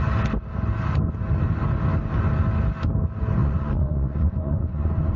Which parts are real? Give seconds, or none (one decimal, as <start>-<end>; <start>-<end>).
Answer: 0.0-3.4